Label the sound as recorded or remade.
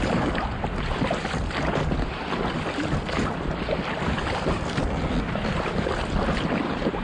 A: recorded